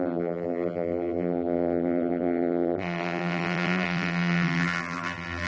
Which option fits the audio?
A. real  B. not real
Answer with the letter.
B